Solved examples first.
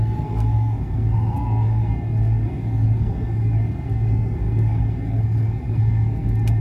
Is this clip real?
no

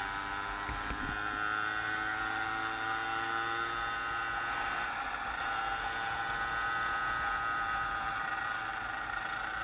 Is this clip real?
yes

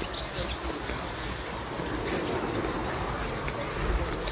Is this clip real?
yes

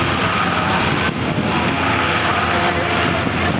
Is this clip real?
yes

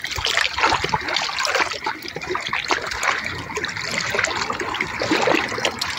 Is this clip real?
yes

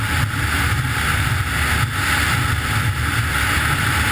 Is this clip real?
yes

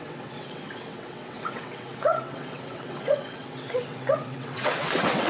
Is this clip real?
no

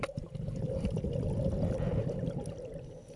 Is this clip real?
yes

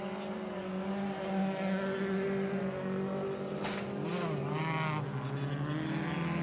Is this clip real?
yes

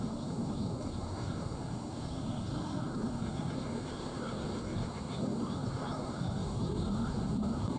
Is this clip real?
no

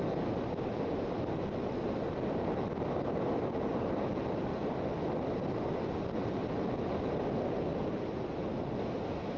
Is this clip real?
yes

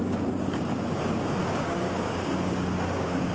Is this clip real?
no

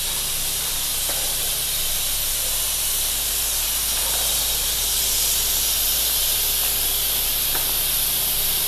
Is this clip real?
yes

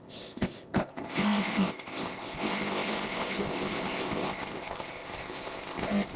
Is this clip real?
no